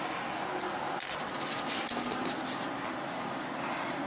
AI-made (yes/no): no